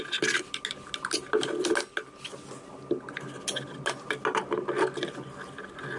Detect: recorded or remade recorded